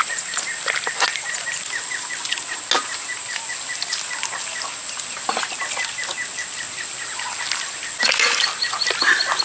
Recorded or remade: recorded